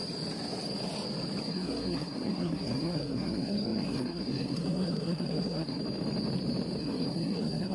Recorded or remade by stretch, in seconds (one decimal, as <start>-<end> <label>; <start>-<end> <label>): 0.0-1.4 recorded; 1.4-5.8 remade; 5.8-6.8 recorded; 6.8-7.7 remade